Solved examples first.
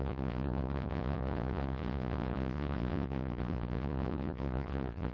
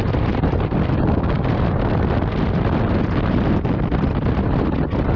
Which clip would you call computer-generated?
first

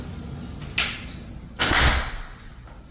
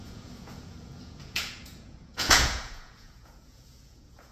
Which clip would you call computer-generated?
second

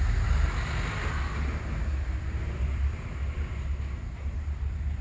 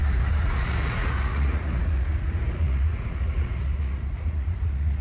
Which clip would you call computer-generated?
second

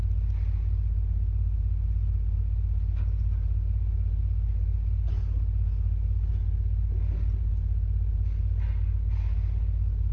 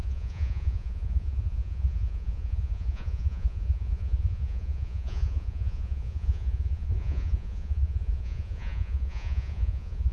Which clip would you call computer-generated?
second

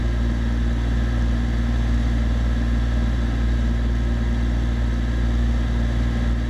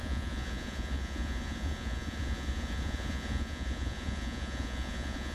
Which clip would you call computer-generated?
second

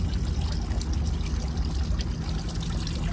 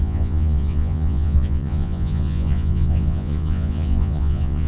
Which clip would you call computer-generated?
second